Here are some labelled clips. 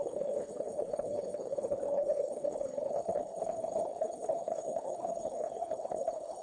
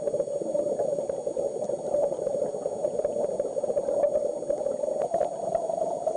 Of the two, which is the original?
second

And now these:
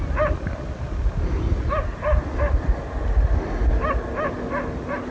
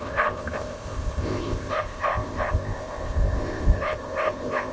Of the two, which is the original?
first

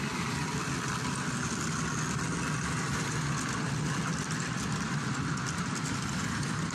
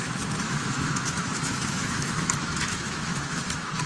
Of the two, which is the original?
first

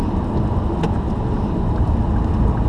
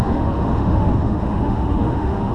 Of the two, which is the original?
first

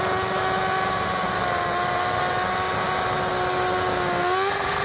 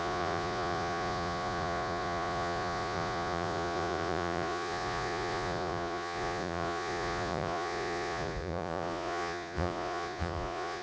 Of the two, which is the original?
first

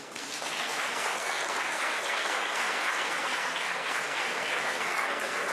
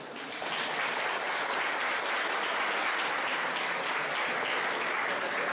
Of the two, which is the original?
second